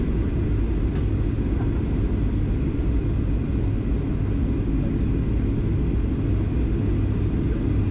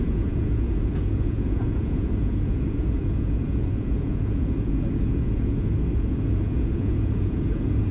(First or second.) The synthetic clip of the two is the second